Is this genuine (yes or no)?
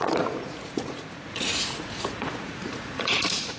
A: no